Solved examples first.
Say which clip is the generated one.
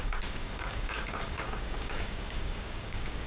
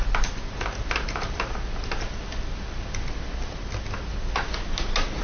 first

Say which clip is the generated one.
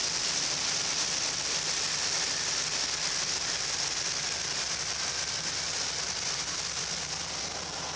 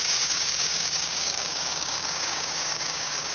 second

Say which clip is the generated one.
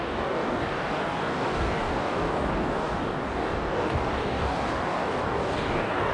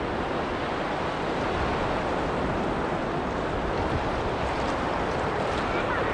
first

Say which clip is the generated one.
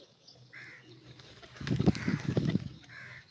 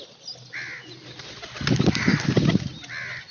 first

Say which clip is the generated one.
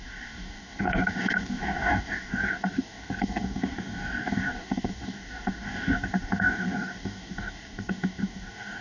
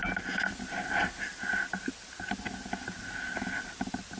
first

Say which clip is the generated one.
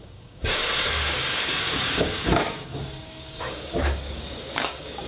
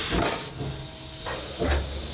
first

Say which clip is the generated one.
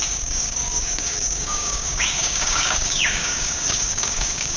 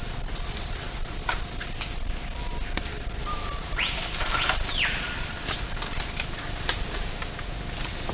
first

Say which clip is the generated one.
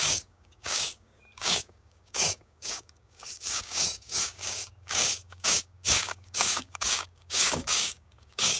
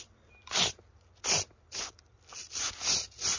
first